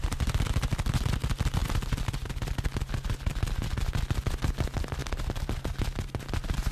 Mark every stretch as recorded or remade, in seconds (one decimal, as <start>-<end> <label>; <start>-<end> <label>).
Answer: 0.0-6.7 recorded